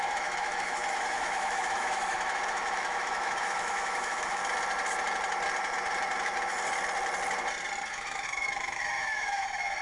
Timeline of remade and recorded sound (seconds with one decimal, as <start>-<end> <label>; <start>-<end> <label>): 0.0-4.4 remade; 4.4-7.9 recorded; 7.9-9.8 remade